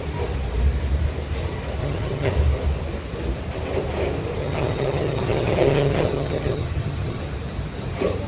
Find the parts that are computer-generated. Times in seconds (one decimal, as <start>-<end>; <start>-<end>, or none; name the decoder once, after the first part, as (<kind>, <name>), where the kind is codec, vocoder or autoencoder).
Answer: 1.8-2.3 (vocoder, HiFi-GAN); 4.4-7.2